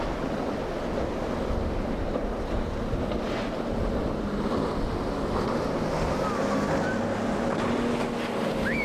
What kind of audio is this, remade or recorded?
recorded